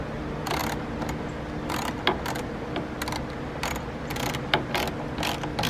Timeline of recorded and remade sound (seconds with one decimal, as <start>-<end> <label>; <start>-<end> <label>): 0.0-5.7 recorded